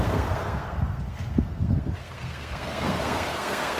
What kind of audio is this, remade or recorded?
remade